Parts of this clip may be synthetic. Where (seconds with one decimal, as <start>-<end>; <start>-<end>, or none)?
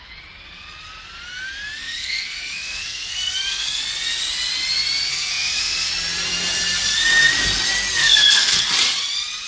1.8-3.8; 5.1-5.9; 8.0-8.6